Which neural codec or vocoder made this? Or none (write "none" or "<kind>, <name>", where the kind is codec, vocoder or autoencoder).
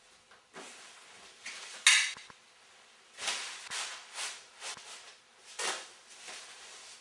none